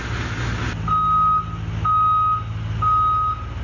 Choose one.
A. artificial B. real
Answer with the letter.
B